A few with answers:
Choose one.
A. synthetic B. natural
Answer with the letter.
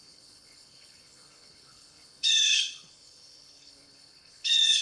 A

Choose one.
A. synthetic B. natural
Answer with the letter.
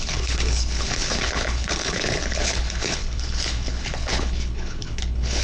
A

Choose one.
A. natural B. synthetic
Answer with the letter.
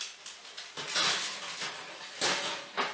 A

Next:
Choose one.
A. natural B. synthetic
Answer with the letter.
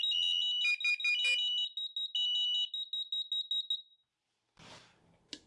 A